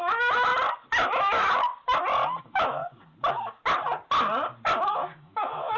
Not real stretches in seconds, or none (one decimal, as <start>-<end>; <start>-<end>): 0.0-0.5; 1.1-1.7; 2.4-2.8; 4.8-5.8